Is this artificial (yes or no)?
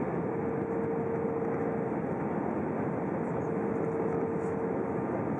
no